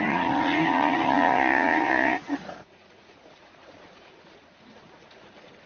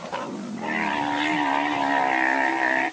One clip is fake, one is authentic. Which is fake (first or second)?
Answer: first